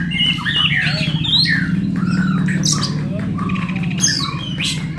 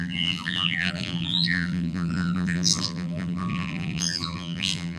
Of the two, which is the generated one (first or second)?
second